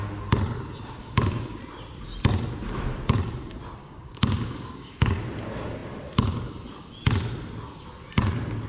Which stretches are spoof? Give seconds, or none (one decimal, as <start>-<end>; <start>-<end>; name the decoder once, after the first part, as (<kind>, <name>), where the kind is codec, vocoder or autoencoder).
1.0-1.6 (codec, DAC); 3.8-5.2